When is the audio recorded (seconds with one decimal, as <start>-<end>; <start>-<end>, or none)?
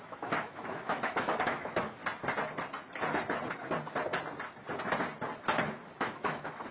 2.0-6.0